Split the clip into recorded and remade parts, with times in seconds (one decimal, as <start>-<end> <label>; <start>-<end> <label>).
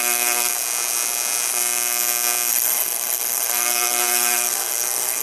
0.0-0.5 remade; 0.5-2.5 recorded; 2.5-5.2 remade